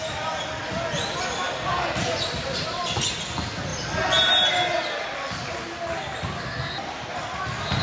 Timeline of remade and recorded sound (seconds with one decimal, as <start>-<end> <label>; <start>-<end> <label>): 0.0-7.8 recorded